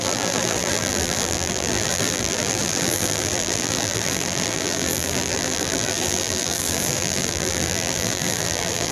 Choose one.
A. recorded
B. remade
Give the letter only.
B